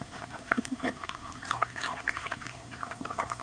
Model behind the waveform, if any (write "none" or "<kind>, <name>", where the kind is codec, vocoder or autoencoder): codec, SNAC